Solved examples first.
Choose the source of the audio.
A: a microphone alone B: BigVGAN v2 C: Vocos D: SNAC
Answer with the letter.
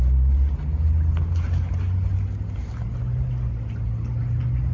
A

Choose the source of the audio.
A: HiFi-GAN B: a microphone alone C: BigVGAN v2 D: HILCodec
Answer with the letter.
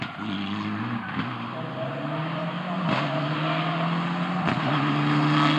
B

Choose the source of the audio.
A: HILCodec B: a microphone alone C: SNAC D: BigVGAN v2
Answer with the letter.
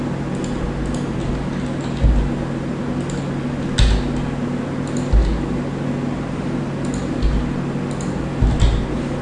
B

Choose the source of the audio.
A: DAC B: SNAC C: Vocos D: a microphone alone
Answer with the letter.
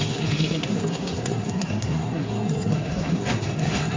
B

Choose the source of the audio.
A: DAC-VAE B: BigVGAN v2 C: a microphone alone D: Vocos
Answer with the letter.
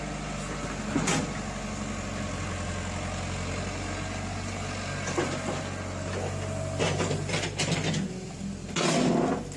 C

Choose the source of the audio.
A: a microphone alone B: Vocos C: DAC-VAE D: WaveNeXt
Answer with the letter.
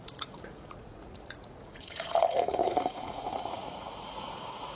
B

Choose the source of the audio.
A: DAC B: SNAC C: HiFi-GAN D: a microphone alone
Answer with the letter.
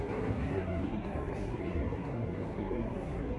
B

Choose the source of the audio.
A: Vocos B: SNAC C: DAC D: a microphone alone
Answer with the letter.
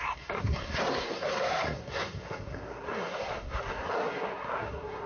B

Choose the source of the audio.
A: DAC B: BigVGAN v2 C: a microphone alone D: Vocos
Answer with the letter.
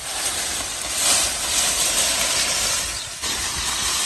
C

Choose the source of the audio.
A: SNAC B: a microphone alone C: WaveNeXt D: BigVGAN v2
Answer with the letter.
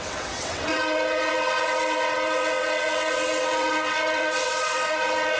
C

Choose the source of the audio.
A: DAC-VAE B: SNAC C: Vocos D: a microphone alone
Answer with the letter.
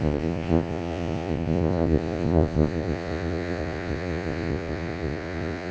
C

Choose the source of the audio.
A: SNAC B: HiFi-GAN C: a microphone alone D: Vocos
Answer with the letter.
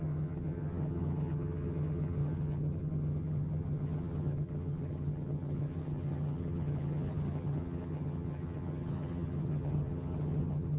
B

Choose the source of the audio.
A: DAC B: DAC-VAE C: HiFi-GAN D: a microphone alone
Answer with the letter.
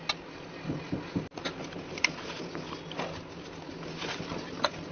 D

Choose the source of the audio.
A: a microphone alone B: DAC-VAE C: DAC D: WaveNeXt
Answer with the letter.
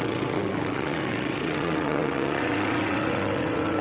D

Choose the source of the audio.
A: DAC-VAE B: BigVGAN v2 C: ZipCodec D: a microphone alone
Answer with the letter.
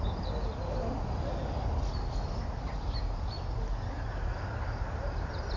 D